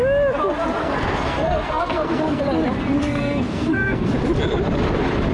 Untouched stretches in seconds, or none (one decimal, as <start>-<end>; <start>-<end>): 0.0-0.8; 2.4-3.0; 4.1-5.3